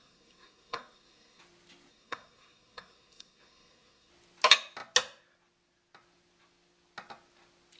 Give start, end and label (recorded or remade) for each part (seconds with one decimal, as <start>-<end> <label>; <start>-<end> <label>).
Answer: 0.0-1.4 remade; 1.4-1.9 recorded; 1.9-4.1 remade; 4.1-7.8 recorded